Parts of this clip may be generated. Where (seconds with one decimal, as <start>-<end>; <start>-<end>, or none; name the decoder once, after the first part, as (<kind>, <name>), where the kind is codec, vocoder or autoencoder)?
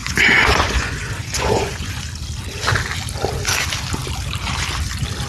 0.0-2.0 (vocoder, Vocos)